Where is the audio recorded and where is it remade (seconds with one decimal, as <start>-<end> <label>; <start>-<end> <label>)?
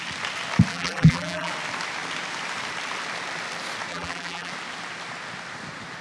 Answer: 0.0-0.7 recorded; 0.7-1.5 remade; 1.5-3.9 recorded; 3.9-4.5 remade; 4.5-6.0 recorded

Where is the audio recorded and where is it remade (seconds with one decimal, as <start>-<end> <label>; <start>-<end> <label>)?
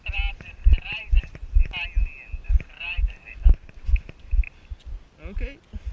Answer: 0.0-0.7 recorded; 0.7-1.6 remade; 1.6-2.4 recorded; 2.4-4.0 remade; 4.0-5.9 recorded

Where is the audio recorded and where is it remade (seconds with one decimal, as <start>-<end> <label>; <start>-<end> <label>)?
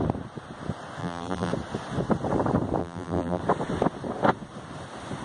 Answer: 0.0-1.0 recorded; 1.0-1.5 remade; 1.5-2.8 recorded; 2.8-3.4 remade; 3.4-5.2 recorded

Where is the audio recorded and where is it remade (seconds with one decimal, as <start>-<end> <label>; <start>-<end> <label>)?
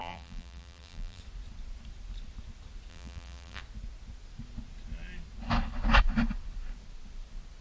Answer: 0.0-1.2 remade; 1.2-2.9 recorded; 2.9-3.6 remade; 3.6-7.6 recorded